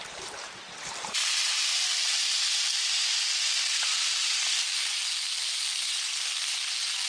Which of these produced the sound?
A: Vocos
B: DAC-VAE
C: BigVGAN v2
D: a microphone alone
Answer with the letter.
C